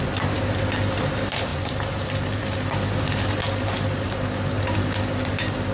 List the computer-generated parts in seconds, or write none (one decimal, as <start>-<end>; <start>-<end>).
none

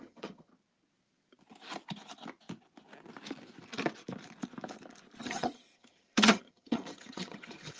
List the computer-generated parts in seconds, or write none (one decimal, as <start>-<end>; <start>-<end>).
0.0-0.5; 5.2-7.8